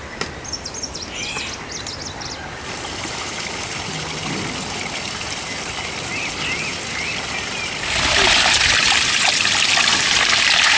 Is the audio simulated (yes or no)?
no